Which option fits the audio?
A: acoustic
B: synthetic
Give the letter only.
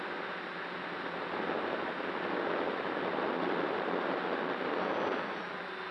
A